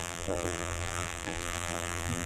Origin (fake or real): fake